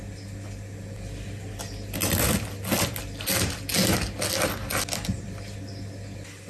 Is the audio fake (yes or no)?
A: no